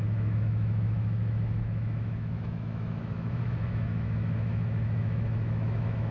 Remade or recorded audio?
remade